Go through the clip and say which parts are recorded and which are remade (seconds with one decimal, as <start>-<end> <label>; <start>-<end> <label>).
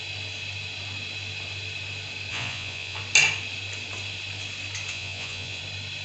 0.0-2.3 recorded; 2.3-3.0 remade; 3.0-4.9 recorded; 4.9-5.6 remade; 5.6-6.0 recorded